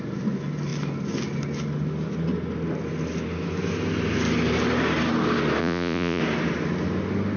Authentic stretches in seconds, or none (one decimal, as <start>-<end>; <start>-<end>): 0.0-5.6; 6.2-7.4